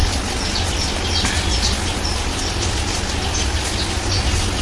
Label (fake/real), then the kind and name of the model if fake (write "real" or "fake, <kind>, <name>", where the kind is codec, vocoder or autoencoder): real